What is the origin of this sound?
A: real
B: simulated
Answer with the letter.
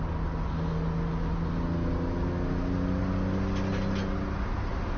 A